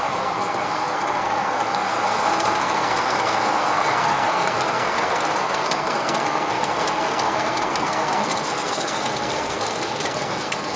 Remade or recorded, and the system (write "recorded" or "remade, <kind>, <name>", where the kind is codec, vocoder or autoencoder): remade, codec, SNAC